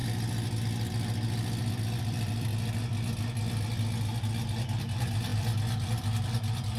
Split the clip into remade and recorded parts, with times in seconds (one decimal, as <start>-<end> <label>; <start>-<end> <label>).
0.0-1.7 recorded; 1.7-2.5 remade; 2.5-4.8 recorded; 4.8-6.8 remade